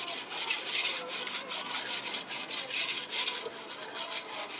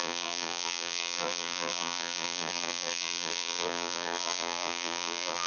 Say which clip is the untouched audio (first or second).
first